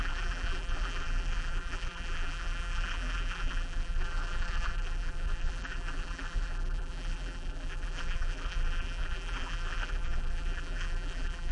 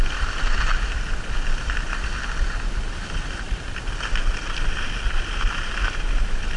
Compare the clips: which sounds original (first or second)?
second